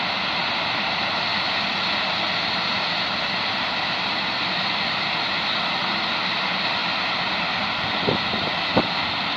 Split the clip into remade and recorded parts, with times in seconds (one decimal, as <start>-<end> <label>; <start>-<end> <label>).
0.0-9.4 recorded